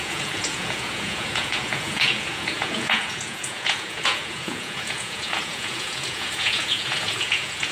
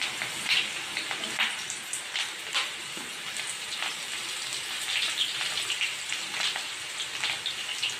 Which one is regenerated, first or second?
first